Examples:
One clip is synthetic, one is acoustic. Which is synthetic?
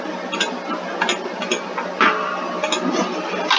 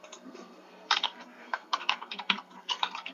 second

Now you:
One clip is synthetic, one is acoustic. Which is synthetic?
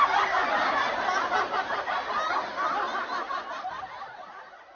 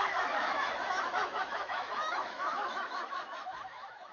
second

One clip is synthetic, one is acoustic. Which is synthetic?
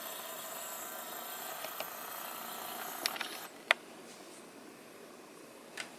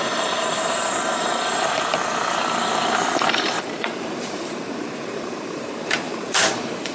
second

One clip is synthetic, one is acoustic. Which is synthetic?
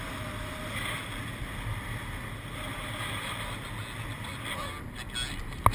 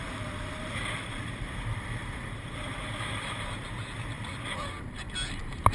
second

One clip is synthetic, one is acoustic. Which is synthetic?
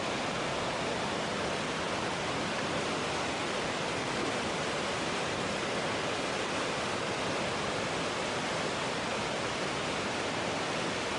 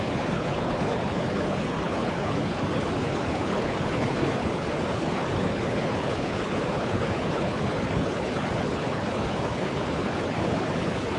second